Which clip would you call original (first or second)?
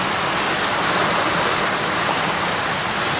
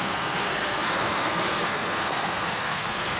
first